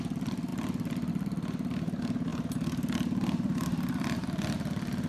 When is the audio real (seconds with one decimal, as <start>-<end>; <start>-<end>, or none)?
0.0-5.1